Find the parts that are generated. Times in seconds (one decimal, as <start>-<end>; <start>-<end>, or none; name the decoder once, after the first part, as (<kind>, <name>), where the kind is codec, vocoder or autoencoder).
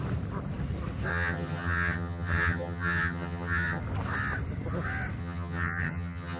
1.1-3.8 (vocoder, HiFi-GAN); 5.2-6.4